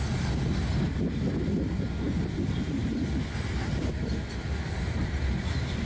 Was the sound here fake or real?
real